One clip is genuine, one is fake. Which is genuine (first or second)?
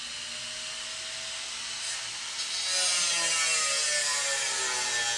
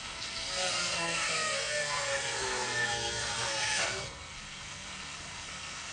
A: first